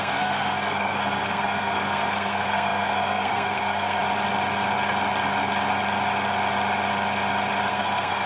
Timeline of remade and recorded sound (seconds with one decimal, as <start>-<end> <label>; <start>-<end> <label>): 0.0-4.0 remade; 4.0-7.7 recorded; 7.7-8.3 remade

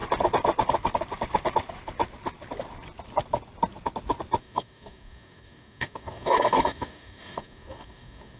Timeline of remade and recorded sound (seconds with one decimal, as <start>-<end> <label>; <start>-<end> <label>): 0.0-4.4 recorded; 4.4-8.4 remade

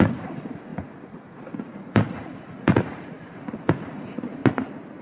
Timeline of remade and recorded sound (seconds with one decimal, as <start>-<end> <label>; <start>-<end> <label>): 0.0-4.4 remade; 4.4-5.0 recorded

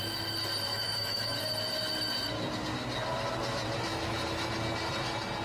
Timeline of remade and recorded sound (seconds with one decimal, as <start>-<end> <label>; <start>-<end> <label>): 0.0-0.7 recorded; 0.7-1.4 remade; 1.4-3.9 recorded; 3.9-4.5 remade; 4.5-5.4 recorded

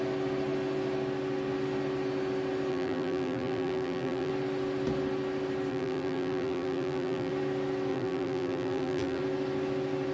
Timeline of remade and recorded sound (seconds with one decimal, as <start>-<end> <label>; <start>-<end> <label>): 0.0-2.7 recorded; 2.7-4.3 remade; 4.3-5.7 recorded; 5.7-7.3 remade; 7.3-7.9 recorded; 7.9-9.2 remade; 9.2-10.1 recorded